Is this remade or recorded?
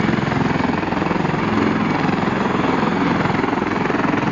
recorded